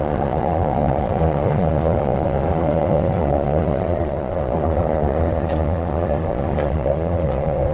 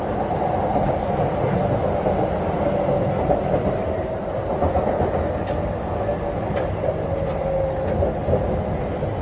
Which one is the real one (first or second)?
second